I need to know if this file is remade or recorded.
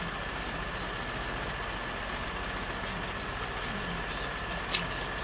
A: recorded